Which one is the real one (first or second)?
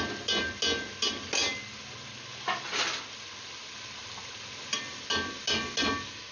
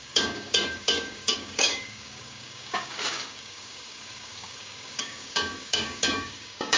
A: first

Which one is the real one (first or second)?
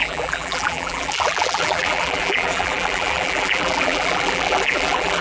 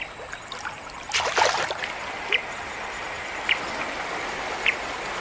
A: second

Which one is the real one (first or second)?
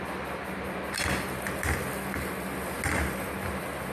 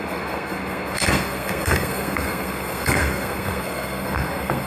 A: first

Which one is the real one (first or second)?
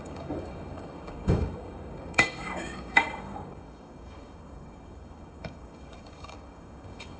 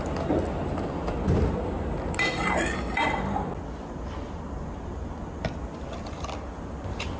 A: second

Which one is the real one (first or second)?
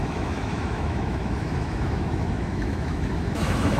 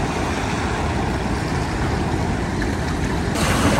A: second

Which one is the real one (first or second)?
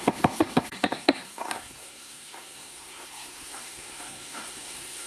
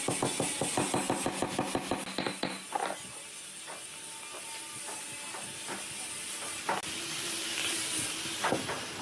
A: second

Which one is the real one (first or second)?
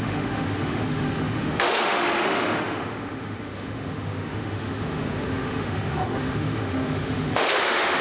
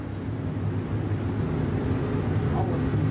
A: second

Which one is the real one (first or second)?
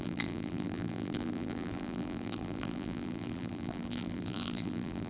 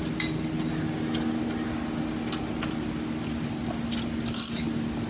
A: second